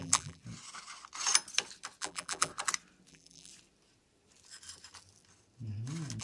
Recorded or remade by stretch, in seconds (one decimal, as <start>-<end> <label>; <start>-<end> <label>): 0.0-0.4 remade; 0.4-2.0 recorded; 2.0-2.5 remade; 2.5-3.1 recorded; 3.1-3.5 remade; 3.5-6.2 recorded